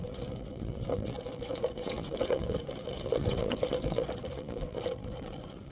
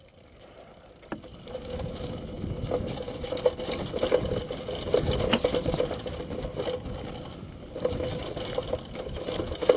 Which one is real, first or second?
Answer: second